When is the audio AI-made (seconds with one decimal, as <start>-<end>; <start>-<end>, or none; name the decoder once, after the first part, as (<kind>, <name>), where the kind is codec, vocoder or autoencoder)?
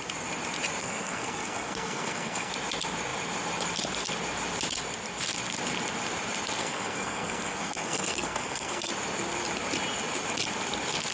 0.8-2.5 (codec, SNAC); 6.6-8.9